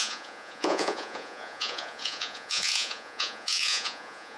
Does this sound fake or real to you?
fake